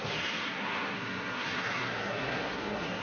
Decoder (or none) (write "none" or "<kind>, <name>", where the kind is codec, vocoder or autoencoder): codec, SNAC